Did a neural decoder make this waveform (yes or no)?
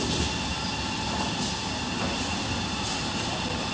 no